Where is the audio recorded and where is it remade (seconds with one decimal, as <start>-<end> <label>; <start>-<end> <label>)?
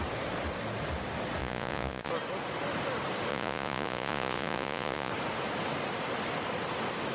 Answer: 0.0-1.4 recorded; 1.4-2.1 remade; 2.1-3.3 recorded; 3.3-5.1 remade; 5.1-7.1 recorded